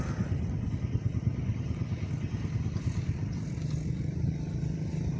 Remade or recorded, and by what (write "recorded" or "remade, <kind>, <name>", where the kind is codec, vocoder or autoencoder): recorded